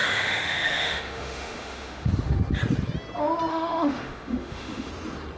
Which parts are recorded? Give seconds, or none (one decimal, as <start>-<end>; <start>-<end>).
2.1-3.5; 4.9-5.4